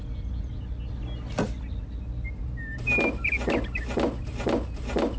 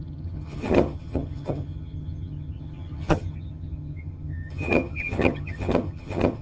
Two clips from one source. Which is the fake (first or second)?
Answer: second